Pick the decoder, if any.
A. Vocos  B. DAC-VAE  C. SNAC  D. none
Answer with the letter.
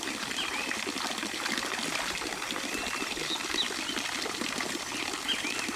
D